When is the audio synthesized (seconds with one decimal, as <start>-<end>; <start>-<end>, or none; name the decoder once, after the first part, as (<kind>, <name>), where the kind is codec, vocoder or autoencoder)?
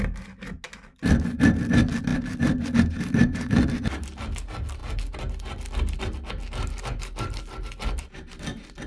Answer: none